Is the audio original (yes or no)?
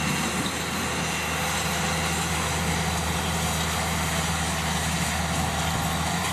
yes